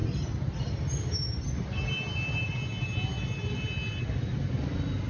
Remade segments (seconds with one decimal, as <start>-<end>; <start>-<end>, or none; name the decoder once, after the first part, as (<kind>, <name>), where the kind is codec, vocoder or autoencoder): none

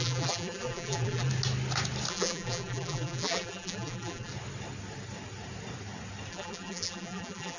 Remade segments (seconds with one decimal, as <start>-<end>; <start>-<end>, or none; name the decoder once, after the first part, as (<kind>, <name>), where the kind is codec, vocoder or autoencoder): 0.0-1.3 (vocoder, BigVGAN v2); 2.1-4.3; 6.3-7.6

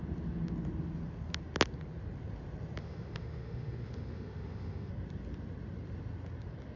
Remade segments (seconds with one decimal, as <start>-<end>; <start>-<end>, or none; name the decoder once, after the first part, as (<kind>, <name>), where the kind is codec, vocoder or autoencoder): 2.8-4.9 (autoencoder, DAC-VAE)

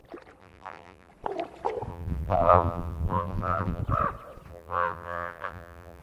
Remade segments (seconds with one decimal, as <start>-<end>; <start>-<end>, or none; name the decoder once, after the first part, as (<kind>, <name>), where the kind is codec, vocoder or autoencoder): 0.4-1.1 (vocoder, BigVGAN v2); 1.9-3.8; 4.5-6.0

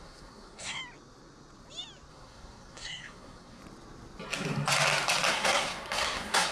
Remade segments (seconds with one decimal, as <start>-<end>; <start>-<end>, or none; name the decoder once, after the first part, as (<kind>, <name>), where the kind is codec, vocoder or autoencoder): 0.0-0.8 (codec, SNAC); 2.1-3.6; 5.3-6.5

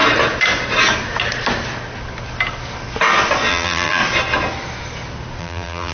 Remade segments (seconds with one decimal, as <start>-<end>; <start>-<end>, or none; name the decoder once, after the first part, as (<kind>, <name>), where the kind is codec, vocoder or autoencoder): 3.5-4.0 (vocoder, BigVGAN v2); 5.4-5.9

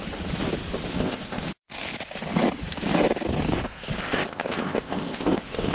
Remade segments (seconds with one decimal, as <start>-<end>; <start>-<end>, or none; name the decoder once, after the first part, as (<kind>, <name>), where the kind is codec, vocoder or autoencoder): 0.9-1.4 (codec, ZipCodec); 4.0-5.7

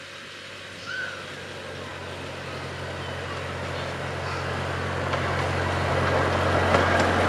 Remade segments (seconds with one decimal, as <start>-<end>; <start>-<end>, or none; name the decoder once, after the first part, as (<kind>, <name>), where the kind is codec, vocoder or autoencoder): none